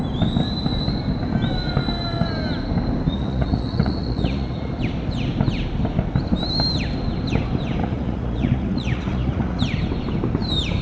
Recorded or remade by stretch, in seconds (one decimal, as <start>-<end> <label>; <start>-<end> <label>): 0.0-3.1 recorded; 3.1-4.7 remade; 4.7-7.8 recorded; 7.8-9.6 remade; 9.6-10.8 recorded